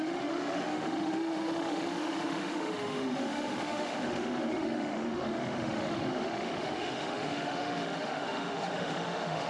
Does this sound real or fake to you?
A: fake